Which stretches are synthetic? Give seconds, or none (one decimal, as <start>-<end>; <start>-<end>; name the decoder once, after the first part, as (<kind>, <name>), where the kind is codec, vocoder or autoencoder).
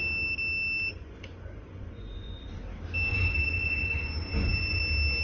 0.9-2.6 (vocoder, Vocos); 3.1-4.8